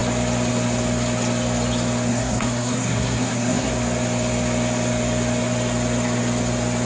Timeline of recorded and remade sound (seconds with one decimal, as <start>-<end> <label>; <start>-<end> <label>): 0.0-2.1 recorded; 2.1-3.7 remade; 3.7-6.9 recorded